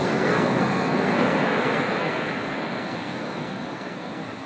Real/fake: fake